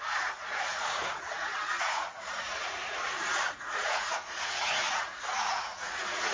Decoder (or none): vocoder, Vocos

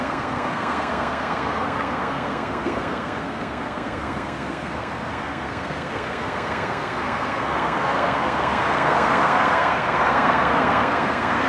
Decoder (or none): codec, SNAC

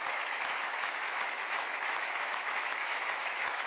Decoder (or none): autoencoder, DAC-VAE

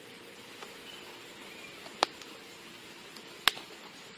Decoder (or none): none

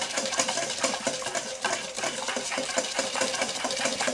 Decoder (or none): none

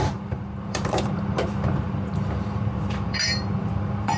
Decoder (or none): vocoder, BigVGAN v2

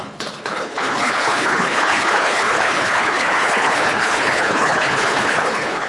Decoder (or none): codec, HILCodec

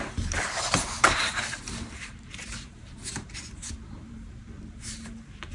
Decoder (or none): vocoder, BigVGAN v2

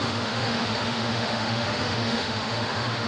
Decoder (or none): autoencoder, DAC-VAE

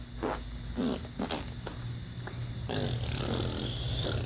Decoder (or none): none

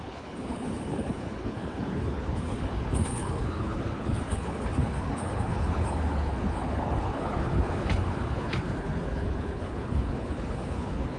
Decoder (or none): codec, HILCodec